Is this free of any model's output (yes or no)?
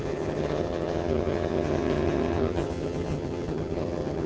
no